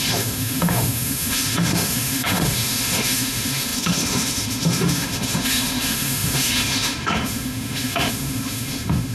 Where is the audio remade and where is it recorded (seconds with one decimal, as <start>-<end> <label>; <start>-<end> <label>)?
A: 0.0-9.1 remade